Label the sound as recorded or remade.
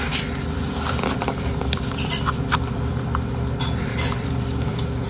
remade